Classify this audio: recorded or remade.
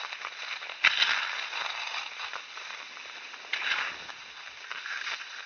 recorded